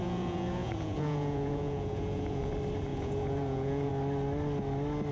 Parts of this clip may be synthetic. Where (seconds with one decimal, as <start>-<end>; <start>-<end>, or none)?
0.0-2.5; 2.9-3.9